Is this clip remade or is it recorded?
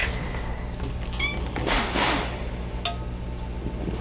recorded